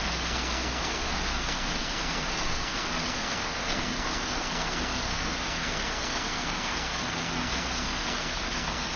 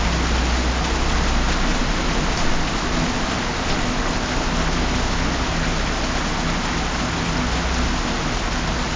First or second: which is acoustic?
second